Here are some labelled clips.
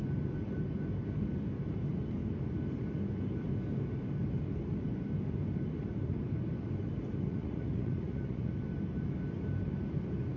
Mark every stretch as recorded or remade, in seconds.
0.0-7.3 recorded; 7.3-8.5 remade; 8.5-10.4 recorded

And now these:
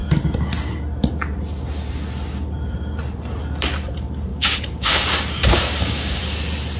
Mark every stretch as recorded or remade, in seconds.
0.0-4.3 recorded; 4.3-6.2 remade; 6.2-6.8 recorded

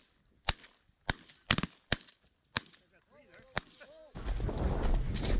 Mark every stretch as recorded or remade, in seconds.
0.0-5.4 recorded

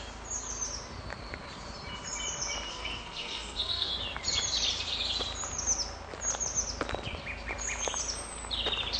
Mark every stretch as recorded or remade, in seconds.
0.0-2.7 recorded; 2.7-3.9 remade; 3.9-9.0 recorded